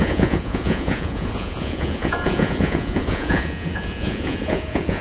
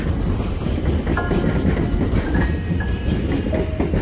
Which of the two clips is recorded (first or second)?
second